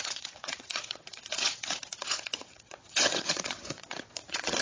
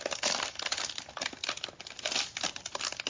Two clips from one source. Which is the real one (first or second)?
second